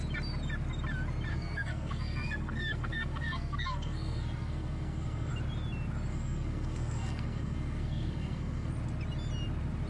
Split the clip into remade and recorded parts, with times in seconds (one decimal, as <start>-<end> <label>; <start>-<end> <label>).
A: 0.0-1.3 recorded; 1.3-5.3 remade; 5.3-6.1 recorded; 6.1-8.7 remade; 8.7-9.9 recorded